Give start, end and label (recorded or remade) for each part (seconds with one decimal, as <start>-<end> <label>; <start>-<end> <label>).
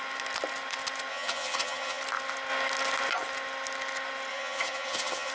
0.0-1.1 recorded; 1.1-2.0 remade; 2.0-4.3 recorded; 4.3-5.3 remade